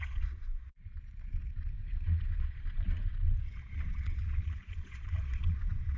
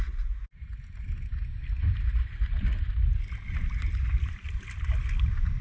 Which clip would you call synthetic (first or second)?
first